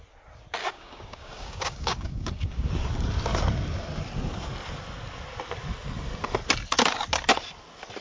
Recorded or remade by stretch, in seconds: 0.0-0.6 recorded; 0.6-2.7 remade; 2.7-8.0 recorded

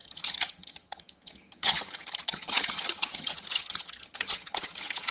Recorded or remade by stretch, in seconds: 0.0-5.1 remade

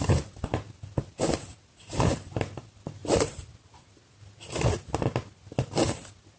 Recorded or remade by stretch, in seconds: 0.0-3.0 recorded; 3.0-3.9 remade; 3.9-6.4 recorded

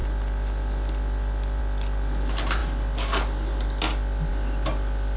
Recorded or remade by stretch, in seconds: 0.0-5.2 recorded